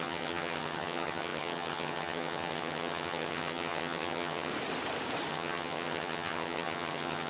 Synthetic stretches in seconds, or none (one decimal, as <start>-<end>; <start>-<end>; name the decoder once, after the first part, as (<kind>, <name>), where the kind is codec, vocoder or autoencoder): 0.0-4.5 (vocoder, HiFi-GAN); 5.3-7.3